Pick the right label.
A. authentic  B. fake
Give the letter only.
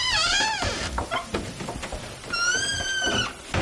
A